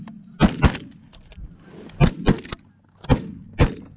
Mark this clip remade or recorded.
recorded